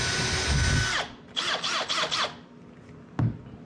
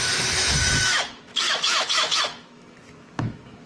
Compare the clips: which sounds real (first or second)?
first